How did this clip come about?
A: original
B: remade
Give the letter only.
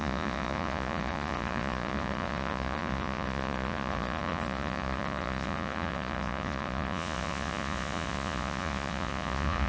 B